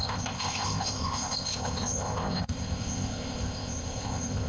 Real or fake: fake